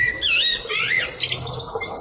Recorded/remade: recorded